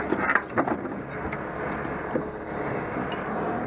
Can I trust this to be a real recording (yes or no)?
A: yes